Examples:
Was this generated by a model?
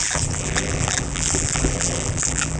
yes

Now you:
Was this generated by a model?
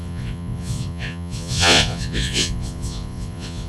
yes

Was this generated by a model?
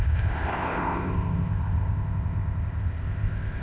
yes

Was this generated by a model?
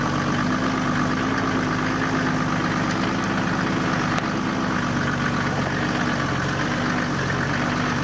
no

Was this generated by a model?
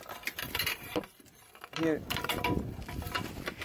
yes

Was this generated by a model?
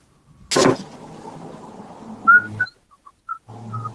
no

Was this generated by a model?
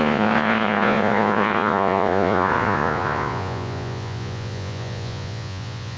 yes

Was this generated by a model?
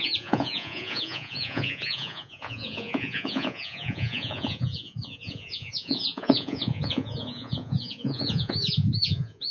yes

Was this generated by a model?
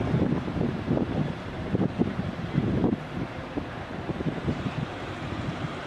yes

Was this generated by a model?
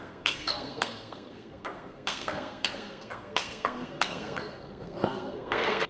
yes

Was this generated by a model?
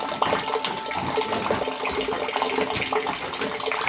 no